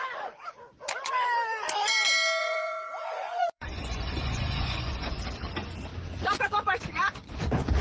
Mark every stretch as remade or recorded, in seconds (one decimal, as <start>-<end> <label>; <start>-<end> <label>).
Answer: 0.0-2.4 recorded; 2.4-5.1 remade; 5.1-7.8 recorded